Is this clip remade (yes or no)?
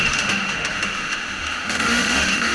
yes